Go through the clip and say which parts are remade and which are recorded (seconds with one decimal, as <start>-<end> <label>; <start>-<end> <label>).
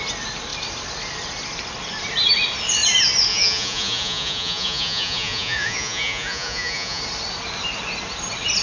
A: 0.0-3.3 recorded; 3.3-7.0 remade; 7.0-8.6 recorded